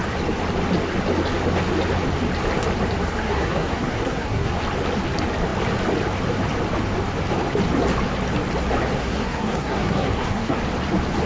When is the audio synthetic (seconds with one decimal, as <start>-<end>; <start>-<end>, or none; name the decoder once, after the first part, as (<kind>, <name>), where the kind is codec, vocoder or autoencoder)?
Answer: 3.2-4.5 (codec, SNAC); 9.0-10.6